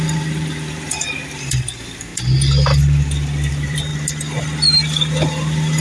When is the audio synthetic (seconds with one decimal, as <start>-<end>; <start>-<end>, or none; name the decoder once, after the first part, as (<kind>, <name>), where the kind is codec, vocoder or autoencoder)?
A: 0.0-2.1 (vocoder, BigVGAN v2); 3.5-3.9